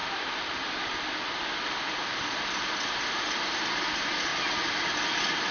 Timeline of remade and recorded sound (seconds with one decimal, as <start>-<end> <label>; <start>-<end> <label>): 0.0-5.5 recorded